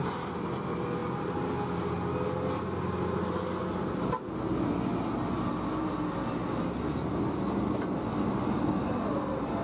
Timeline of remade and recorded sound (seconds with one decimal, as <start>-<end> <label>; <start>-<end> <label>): 0.0-9.6 recorded